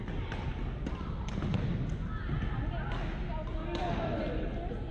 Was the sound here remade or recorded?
recorded